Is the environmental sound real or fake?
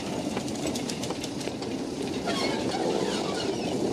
real